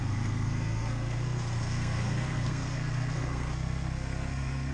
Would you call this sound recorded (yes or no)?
no